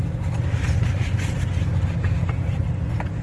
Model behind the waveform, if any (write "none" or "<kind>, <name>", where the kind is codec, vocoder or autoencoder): none